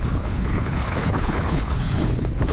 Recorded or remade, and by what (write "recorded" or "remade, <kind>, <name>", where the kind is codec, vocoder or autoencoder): remade, codec, HILCodec